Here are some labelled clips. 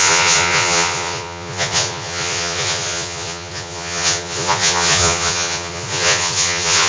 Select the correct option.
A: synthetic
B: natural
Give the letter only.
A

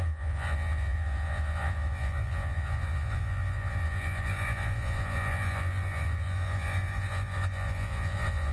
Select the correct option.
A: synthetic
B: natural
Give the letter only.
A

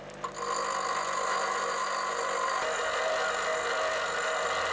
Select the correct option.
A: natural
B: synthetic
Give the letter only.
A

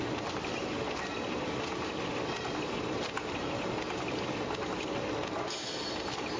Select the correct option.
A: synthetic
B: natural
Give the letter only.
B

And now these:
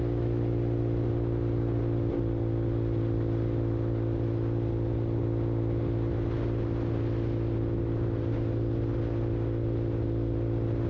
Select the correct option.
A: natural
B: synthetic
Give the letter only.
A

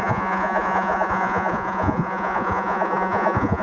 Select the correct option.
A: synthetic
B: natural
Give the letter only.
A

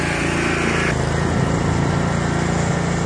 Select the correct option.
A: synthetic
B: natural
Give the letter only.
B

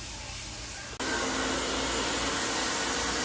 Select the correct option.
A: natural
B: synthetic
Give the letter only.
A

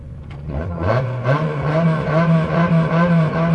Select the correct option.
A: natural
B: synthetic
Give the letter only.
B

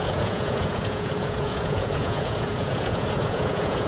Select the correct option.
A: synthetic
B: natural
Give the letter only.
A